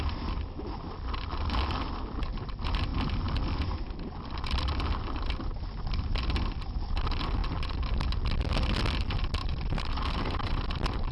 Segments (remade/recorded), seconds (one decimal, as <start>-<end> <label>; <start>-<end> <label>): 0.0-9.4 recorded; 9.4-10.6 remade; 10.6-11.1 recorded